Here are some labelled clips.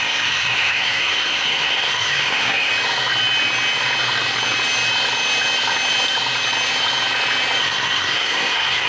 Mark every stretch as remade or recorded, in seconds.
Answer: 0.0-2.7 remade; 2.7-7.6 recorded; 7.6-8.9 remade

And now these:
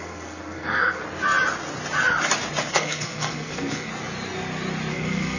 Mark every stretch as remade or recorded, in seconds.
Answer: 0.0-1.0 remade; 1.0-2.7 recorded; 2.7-3.9 remade; 3.9-4.9 recorded; 4.9-5.4 remade

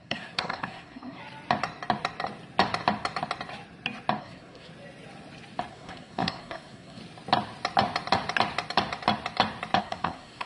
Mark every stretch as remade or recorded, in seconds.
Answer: 0.0-1.2 remade; 1.2-4.2 recorded; 4.2-4.7 remade; 4.7-5.7 recorded; 5.7-7.0 remade; 7.0-9.8 recorded; 9.8-10.5 remade